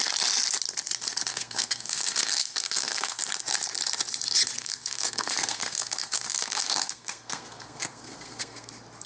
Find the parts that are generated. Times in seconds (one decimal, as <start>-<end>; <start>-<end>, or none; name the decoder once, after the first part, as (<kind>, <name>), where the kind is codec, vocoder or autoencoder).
1.3-3.2 (codec, SNAC); 4.6-8.7